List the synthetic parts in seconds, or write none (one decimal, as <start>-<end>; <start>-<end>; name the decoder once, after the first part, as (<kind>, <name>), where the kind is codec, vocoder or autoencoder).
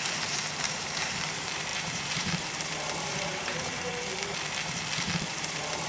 0.0-4.1 (vocoder, BigVGAN v2); 5.3-5.9